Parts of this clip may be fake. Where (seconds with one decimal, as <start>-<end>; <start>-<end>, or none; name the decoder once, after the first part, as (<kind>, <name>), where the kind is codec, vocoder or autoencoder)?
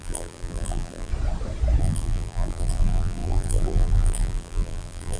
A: 0.0-1.1 (vocoder, BigVGAN v2); 1.8-5.2